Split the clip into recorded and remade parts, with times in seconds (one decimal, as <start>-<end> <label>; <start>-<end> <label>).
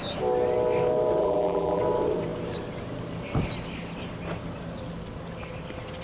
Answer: 0.0-1.2 recorded; 1.2-1.8 remade; 1.8-6.0 recorded